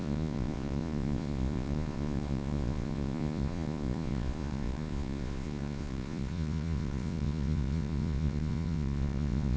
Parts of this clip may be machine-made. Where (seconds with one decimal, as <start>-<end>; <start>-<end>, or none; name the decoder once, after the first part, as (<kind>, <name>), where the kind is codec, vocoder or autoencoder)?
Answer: 0.0-9.6 (vocoder, Vocos)

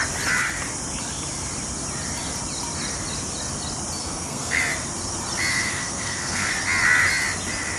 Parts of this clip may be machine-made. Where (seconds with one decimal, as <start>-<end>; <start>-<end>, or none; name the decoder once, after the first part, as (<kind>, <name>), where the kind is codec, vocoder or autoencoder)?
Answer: 4.0-4.6 (codec, SNAC); 5.5-6.5

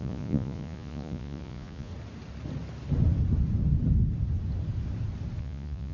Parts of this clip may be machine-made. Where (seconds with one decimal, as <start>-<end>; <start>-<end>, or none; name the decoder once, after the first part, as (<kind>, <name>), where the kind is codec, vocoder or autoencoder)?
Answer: 0.0-1.9 (vocoder, Vocos); 5.4-5.9

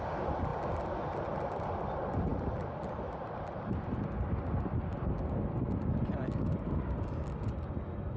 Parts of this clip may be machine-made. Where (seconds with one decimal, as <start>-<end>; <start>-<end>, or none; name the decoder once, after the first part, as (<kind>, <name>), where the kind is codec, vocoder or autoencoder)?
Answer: none